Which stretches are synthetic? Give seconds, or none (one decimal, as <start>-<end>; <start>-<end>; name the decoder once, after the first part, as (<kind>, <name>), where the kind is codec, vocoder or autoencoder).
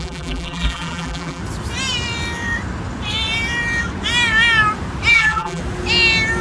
0.0-1.4 (vocoder, BigVGAN v2); 5.1-5.6